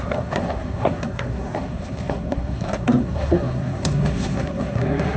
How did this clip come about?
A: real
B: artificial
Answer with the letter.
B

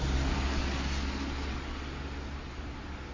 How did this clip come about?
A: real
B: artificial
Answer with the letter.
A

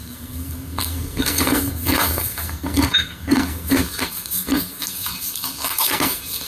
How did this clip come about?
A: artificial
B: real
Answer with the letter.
A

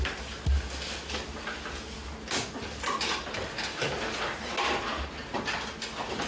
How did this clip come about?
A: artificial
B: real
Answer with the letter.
B